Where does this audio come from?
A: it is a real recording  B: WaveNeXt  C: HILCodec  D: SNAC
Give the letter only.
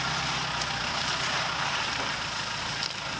A